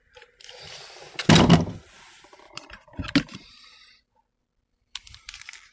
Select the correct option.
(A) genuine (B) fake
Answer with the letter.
A